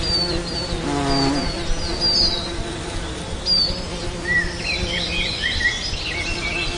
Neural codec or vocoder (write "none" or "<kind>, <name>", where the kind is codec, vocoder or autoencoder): none